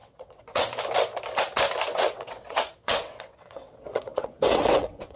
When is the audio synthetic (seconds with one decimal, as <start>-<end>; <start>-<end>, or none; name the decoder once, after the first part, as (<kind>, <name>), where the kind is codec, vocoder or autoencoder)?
0.0-0.8 (vocoder, WaveNeXt); 1.9-5.2